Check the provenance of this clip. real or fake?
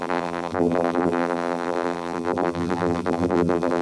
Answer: fake